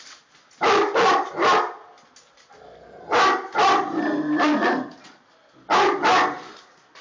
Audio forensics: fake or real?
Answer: real